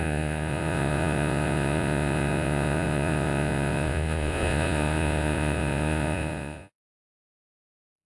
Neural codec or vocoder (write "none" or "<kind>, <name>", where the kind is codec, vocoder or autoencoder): vocoder, Vocos